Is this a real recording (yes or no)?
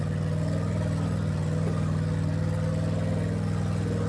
yes